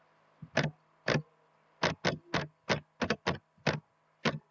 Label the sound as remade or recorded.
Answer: recorded